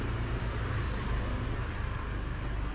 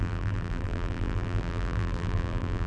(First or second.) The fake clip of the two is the second